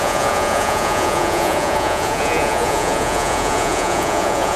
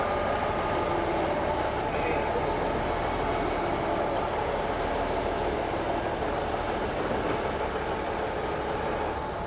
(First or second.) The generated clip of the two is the first